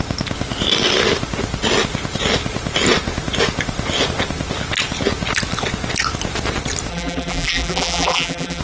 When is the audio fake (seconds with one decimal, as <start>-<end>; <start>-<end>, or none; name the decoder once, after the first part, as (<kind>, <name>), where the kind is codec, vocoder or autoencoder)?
6.9-8.6 (vocoder, BigVGAN v2)